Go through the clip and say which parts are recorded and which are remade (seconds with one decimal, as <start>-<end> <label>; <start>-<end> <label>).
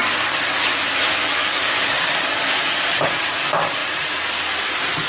0.0-1.2 recorded; 1.2-2.5 remade; 2.5-5.1 recorded